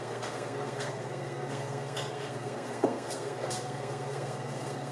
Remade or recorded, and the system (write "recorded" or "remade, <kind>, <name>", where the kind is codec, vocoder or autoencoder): remade, codec, SNAC